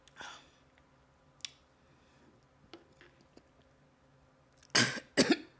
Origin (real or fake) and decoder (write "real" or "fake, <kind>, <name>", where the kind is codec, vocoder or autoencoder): real